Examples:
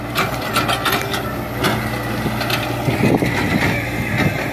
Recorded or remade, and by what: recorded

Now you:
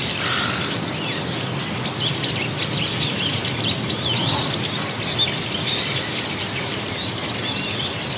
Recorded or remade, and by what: recorded